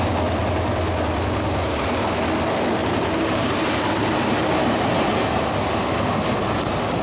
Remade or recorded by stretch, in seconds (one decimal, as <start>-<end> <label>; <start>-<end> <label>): 0.0-2.8 recorded; 2.8-5.5 remade; 5.5-7.0 recorded